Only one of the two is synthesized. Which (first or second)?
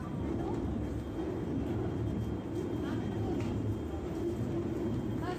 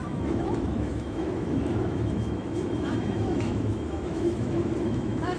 second